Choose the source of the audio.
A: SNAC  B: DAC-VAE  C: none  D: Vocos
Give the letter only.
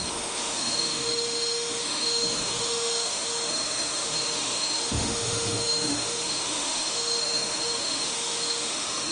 B